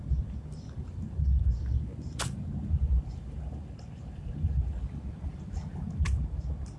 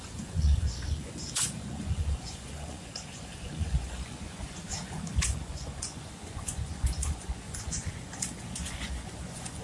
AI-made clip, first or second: second